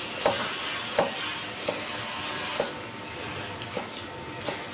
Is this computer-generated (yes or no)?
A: no